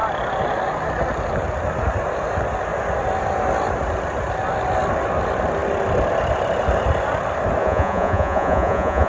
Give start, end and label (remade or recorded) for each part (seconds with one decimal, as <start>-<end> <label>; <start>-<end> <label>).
0.0-7.6 recorded; 7.6-9.1 remade